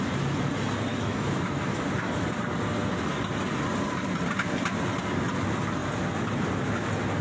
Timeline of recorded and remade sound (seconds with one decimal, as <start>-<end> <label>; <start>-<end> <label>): 0.0-0.9 recorded; 0.9-1.8 remade; 1.8-7.2 recorded